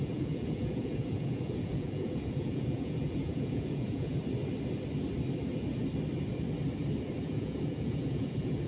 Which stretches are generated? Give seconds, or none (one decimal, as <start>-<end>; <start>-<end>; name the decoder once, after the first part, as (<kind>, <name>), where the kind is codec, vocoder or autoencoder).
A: 0.0-4.2 (vocoder, Vocos); 7.2-8.7